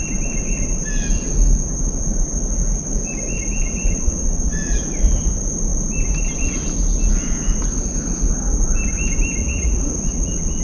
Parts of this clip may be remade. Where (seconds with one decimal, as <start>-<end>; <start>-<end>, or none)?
3.7-4.8; 9.4-10.6